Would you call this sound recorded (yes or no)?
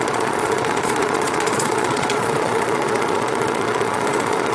no